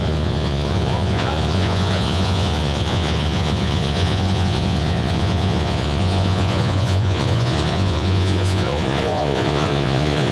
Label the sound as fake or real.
fake